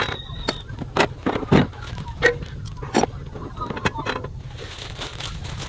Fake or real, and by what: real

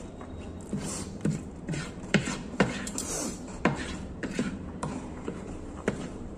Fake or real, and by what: fake, vocoder, BigVGAN v2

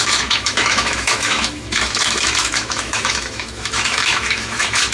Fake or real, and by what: fake, autoencoder, DAC-VAE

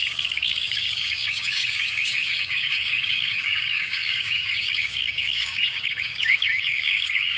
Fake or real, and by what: fake, codec, DAC